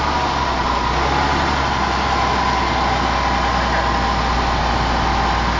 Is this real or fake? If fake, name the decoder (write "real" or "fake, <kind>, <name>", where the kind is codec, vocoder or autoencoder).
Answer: real